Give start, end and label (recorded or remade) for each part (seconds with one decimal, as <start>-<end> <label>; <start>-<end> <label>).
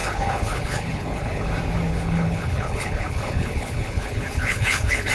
0.0-1.5 remade; 1.5-1.9 recorded; 1.9-5.1 remade